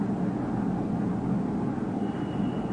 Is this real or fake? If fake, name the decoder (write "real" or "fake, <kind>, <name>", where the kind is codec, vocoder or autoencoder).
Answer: real